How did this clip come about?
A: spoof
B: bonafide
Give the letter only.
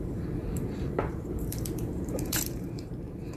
A